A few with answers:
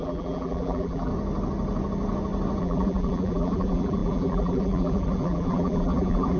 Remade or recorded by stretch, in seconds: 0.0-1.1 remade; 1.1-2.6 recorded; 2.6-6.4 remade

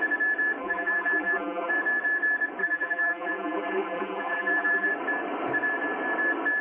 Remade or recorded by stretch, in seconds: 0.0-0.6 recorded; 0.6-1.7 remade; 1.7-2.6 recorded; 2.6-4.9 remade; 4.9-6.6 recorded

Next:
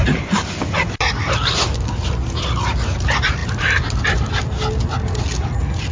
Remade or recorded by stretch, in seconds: 0.0-5.9 recorded